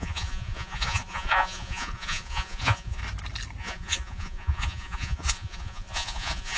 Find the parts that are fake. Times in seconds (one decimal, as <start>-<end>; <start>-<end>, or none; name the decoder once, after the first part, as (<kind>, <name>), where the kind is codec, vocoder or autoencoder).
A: 0.0-3.0 (vocoder, Vocos); 3.6-6.6